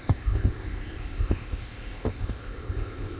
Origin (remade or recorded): remade